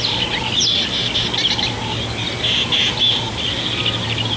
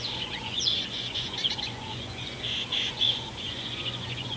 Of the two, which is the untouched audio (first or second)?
first